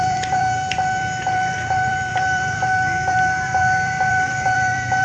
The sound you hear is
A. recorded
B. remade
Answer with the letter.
B